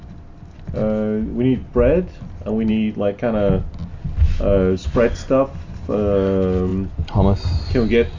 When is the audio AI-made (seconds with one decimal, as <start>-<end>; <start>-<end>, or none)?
none